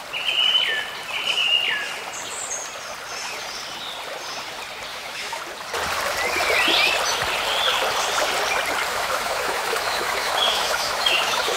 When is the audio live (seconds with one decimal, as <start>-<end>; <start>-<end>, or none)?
0.0-4.9; 5.4-8.9